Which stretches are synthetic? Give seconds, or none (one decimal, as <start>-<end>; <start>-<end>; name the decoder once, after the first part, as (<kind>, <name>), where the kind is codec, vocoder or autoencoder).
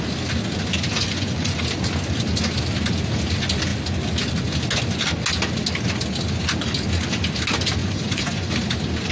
0.9-1.6 (vocoder, Vocos); 7.8-8.5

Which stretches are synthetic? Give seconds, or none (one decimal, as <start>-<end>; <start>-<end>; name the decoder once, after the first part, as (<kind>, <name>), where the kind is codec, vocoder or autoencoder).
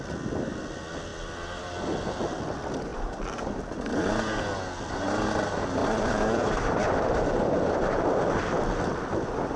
1.1-1.6 (vocoder, BigVGAN v2); 2.9-3.6; 5.8-8.0